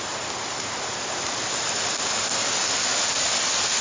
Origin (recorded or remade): recorded